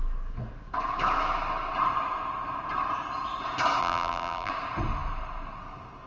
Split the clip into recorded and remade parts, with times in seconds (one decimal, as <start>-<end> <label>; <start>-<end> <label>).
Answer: 0.0-3.8 recorded; 3.8-4.5 remade; 4.5-6.1 recorded